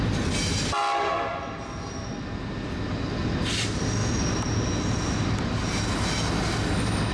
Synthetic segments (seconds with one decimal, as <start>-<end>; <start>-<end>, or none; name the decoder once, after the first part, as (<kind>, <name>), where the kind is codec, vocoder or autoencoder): none